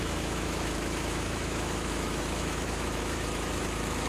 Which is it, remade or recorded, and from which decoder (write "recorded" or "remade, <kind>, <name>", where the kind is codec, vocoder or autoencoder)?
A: remade, autoencoder, DAC-VAE